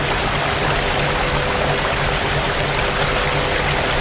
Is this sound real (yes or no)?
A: yes